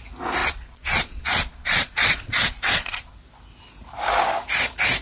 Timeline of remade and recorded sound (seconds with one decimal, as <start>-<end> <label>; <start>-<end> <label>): 0.0-0.4 recorded; 0.4-3.1 remade; 3.1-5.0 recorded

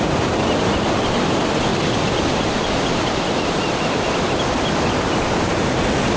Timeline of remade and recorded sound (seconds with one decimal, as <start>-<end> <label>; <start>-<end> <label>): 0.0-1.7 recorded; 1.7-4.8 remade; 4.8-6.2 recorded